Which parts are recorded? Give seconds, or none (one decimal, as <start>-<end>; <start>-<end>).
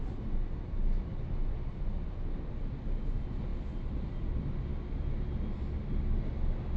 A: 0.0-6.8